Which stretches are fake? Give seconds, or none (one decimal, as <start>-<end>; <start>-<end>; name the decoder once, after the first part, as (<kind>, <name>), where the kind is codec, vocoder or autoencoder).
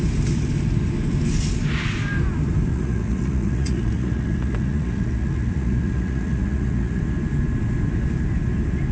2.7-7.0 (vocoder, Vocos)